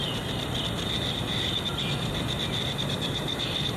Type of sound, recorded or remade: recorded